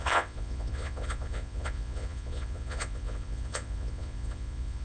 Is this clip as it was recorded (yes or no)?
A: no